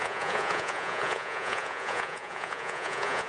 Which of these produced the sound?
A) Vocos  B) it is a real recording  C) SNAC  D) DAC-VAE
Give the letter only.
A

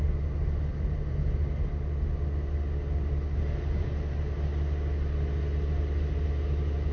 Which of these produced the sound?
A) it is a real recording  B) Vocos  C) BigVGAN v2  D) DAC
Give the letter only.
A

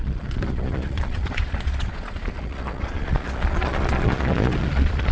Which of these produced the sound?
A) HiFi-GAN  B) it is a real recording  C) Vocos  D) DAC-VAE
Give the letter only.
C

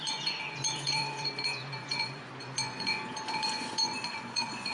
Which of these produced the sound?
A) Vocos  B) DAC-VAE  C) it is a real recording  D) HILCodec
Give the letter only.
A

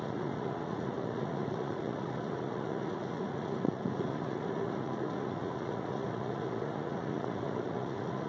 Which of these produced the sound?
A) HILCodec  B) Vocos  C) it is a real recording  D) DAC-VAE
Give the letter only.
B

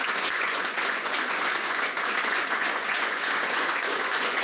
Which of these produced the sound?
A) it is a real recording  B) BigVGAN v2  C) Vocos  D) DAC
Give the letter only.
C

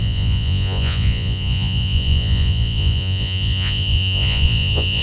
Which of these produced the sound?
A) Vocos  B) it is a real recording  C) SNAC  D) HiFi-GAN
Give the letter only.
A